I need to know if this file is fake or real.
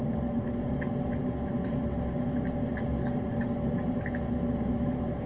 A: real